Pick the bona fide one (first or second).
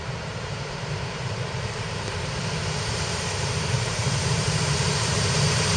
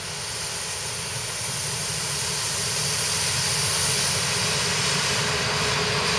second